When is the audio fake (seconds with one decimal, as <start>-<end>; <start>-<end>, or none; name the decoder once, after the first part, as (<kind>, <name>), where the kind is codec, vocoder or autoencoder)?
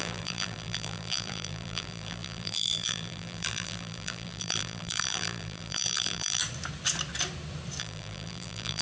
0.0-6.4 (vocoder, BigVGAN v2); 7.8-8.8